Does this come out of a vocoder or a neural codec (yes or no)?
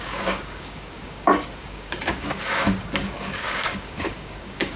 yes